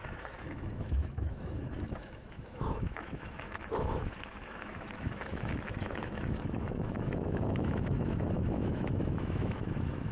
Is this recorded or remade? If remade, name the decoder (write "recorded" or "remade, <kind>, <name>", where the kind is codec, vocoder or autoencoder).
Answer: remade, autoencoder, DAC-VAE